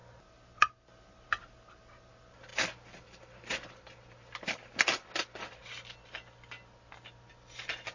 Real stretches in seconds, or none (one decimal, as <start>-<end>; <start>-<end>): 0.0-7.9